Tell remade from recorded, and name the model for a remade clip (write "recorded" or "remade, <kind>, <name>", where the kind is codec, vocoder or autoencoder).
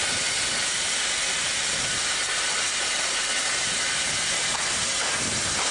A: recorded